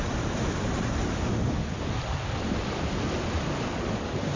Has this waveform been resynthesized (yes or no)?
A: no